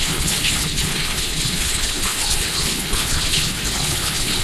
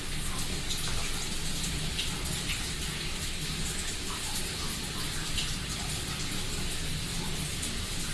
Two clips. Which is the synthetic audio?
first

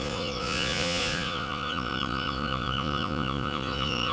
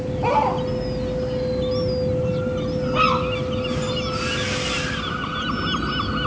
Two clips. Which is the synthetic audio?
first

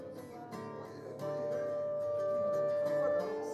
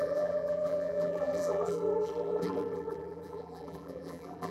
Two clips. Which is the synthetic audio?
second